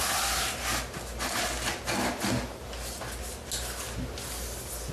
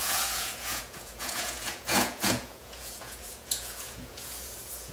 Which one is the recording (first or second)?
first